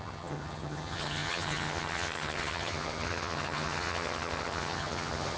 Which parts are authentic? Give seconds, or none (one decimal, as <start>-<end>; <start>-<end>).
none